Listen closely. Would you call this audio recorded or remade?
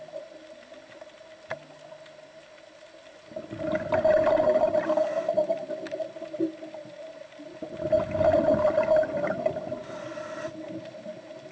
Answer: recorded